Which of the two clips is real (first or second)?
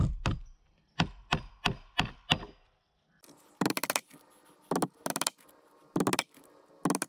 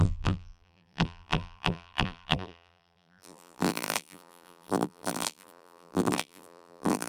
first